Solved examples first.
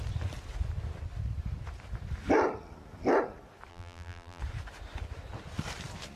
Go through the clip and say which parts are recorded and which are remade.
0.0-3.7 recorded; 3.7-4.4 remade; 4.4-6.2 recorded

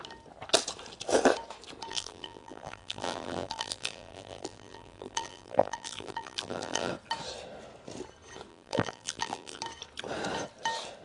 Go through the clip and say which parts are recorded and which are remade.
0.0-1.9 recorded; 1.9-6.9 remade; 6.9-8.5 recorded; 8.5-9.6 remade; 9.6-11.0 recorded